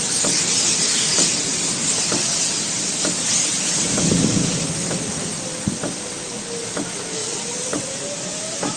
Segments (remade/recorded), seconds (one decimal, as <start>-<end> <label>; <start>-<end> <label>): 0.0-7.2 recorded; 7.2-7.9 remade; 7.9-8.8 recorded